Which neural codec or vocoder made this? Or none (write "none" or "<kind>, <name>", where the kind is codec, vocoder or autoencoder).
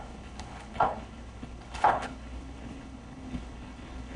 codec, HILCodec